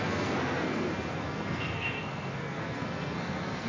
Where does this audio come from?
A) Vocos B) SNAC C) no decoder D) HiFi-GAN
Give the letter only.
B